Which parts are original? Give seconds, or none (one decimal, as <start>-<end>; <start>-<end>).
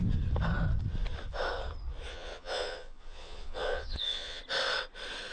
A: 0.0-2.1; 4.4-5.3